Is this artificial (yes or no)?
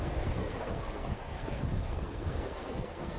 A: yes